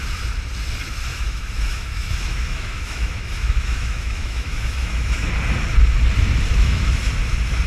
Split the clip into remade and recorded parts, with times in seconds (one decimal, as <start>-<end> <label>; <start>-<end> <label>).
0.0-1.1 recorded; 1.1-5.3 remade; 5.3-6.5 recorded; 6.5-7.0 remade; 7.0-7.7 recorded